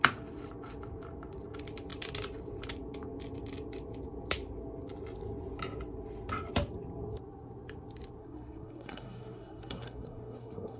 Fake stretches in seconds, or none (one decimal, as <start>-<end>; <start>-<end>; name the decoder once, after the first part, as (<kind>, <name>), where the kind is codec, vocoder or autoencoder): 8.2-10.8 (codec, SNAC)